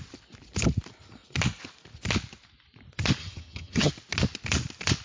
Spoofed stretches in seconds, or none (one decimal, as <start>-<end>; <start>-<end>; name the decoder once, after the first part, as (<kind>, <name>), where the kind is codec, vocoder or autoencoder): 3.2-3.9 (vocoder, HiFi-GAN)